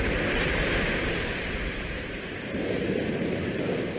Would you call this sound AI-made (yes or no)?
yes